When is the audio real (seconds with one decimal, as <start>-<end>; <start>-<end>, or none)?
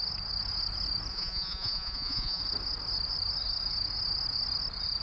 0.0-1.1; 2.4-5.0